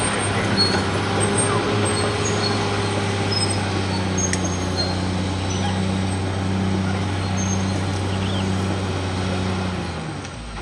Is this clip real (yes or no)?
yes